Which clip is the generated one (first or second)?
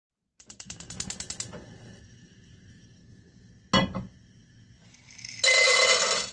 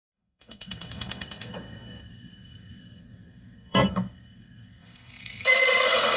second